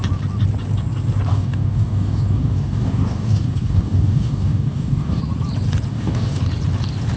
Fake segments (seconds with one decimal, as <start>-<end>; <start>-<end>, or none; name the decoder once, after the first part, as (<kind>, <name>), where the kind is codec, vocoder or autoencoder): 1.3-5.2 (codec, DAC); 5.9-6.4

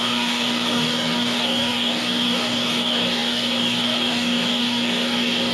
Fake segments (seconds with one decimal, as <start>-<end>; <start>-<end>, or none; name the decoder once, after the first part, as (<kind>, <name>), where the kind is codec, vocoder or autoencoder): 0.0-5.5 (codec, DAC)

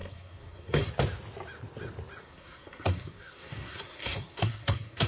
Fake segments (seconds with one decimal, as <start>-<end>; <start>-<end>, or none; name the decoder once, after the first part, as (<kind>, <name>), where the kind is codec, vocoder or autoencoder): 0.0-0.9 (codec, SNAC); 2.2-5.1

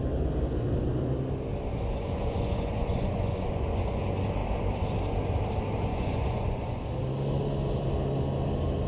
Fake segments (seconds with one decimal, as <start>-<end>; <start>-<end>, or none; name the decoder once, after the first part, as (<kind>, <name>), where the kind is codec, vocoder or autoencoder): 1.7-4.0 (vocoder, Vocos); 5.9-6.8